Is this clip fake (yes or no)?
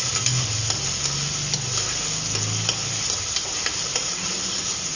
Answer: no